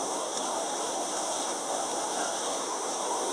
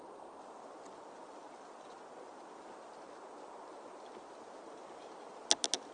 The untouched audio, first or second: second